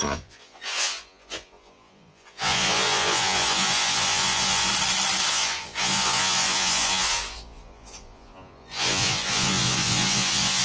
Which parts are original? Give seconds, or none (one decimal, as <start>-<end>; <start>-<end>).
4.7-5.3